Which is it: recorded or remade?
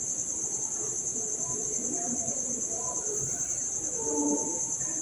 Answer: remade